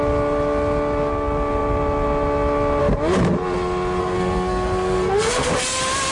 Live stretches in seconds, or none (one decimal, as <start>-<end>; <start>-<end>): 0.0-4.0; 5.5-6.1